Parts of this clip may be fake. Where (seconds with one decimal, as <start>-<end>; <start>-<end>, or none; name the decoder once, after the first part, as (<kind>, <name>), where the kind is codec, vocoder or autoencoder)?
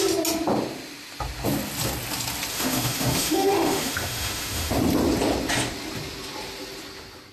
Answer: 2.5-4.7 (autoencoder, DAC-VAE)